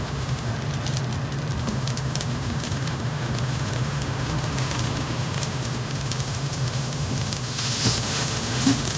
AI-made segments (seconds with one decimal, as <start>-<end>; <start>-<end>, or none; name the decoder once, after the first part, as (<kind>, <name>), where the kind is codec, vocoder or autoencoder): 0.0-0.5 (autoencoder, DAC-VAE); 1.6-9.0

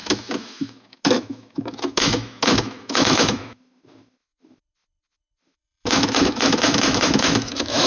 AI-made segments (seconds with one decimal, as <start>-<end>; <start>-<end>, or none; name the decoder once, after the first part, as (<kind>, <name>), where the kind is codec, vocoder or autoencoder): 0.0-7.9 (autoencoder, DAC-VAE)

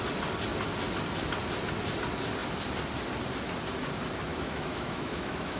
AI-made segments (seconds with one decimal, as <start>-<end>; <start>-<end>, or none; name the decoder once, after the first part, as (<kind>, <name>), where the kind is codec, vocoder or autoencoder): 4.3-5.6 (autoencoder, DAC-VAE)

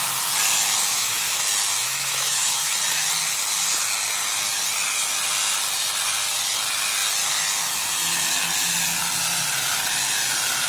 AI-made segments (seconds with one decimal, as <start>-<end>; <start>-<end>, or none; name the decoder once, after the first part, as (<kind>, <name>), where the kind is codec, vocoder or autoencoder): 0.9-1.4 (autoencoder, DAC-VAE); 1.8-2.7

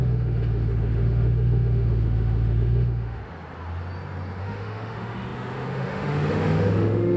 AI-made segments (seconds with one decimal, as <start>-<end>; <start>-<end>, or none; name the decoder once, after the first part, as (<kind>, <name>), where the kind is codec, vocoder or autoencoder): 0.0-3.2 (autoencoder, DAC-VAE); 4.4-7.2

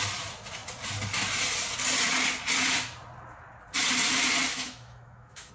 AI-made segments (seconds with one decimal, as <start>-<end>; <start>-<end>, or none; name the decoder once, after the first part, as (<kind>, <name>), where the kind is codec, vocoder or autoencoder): 4.5-5.5 (autoencoder, DAC-VAE)

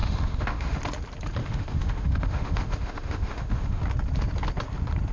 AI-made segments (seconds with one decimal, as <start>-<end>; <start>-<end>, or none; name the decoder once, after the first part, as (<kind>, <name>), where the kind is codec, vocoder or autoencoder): 0.0-0.8 (autoencoder, DAC-VAE); 1.4-3.8